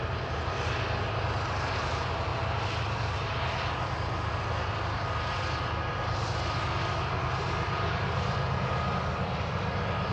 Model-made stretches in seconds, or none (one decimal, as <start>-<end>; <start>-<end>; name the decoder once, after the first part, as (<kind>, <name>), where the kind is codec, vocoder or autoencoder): none